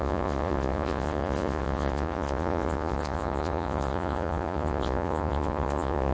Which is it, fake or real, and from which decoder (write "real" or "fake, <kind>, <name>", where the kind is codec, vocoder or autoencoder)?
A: fake, vocoder, Vocos